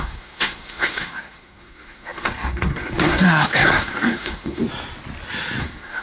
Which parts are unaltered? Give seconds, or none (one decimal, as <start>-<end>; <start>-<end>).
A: 4.6-5.6